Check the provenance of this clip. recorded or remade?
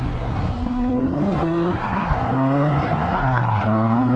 remade